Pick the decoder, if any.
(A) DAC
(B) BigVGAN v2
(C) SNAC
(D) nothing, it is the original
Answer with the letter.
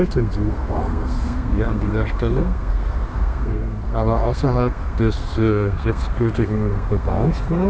C